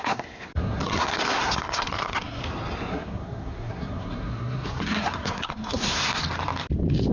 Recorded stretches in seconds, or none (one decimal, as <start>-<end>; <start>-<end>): 2.4-2.9; 6.2-7.1